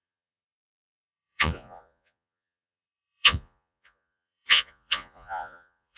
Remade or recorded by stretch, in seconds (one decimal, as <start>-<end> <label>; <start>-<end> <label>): 0.0-6.0 remade